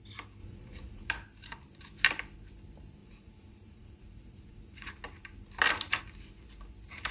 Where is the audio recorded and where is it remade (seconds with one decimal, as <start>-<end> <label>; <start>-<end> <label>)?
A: 0.0-0.4 recorded; 0.4-1.1 remade; 1.1-3.0 recorded; 3.0-4.9 remade; 4.9-7.1 recorded